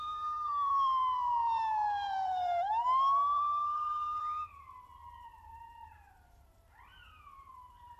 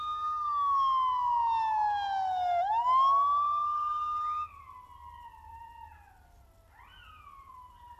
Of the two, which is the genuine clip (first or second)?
second